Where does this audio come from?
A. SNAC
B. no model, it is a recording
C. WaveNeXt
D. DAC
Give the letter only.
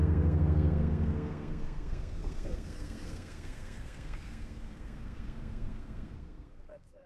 A